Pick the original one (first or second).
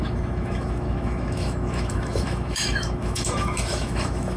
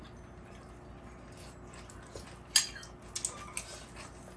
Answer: second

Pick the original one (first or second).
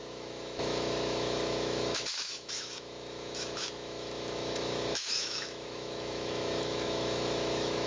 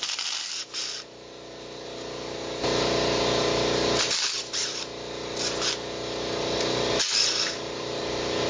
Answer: second